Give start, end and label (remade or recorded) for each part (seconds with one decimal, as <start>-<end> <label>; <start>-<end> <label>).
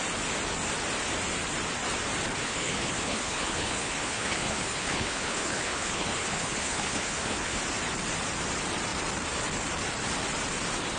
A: 0.0-2.4 recorded; 2.4-7.6 remade; 7.6-11.0 recorded